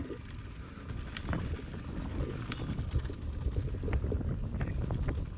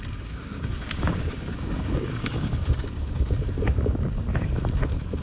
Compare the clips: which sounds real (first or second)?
first